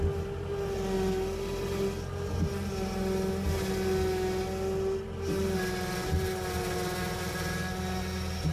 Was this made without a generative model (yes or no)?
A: yes